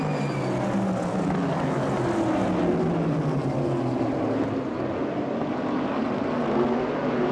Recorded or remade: recorded